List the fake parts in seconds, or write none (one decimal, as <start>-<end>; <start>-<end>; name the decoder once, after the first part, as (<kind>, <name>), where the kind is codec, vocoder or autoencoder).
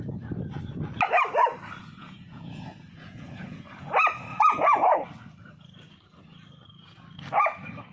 2.0-3.9 (vocoder, Vocos); 4.3-4.9